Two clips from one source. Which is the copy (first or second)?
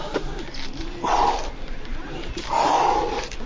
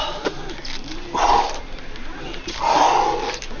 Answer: first